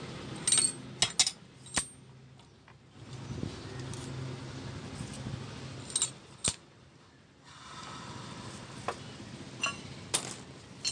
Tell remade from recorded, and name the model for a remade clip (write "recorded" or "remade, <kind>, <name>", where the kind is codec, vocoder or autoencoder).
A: recorded